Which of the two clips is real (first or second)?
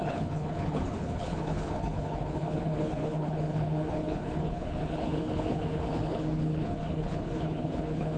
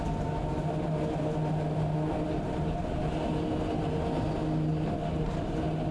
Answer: second